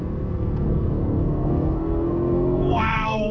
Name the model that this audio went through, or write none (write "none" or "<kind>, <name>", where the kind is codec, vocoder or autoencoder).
codec, SNAC